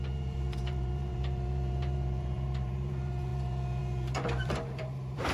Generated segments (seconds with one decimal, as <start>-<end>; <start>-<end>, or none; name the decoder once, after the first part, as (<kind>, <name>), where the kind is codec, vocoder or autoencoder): 0.0-5.3 (vocoder, BigVGAN v2)